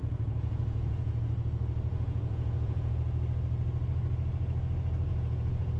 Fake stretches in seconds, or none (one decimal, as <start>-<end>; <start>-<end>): 0.0-1.2; 1.9-2.9; 5.1-5.8